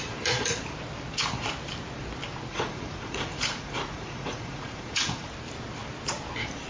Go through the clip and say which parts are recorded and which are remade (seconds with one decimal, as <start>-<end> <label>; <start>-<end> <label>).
0.0-2.5 recorded; 2.5-5.3 remade; 5.3-6.7 recorded